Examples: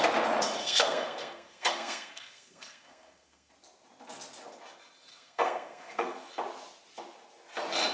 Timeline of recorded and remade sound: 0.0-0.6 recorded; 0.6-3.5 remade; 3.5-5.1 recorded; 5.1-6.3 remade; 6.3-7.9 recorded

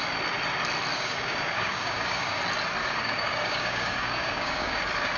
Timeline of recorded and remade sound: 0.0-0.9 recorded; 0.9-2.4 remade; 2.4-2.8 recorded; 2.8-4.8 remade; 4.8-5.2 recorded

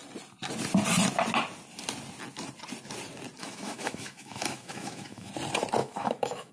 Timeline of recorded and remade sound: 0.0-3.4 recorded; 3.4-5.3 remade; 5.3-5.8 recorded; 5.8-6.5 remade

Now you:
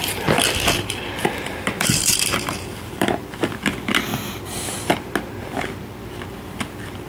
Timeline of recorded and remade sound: 0.0-1.2 recorded; 1.2-3.6 remade; 3.6-7.1 recorded

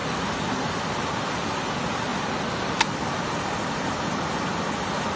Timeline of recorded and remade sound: 0.0-5.2 recorded